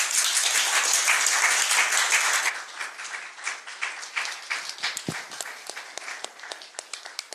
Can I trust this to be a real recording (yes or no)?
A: yes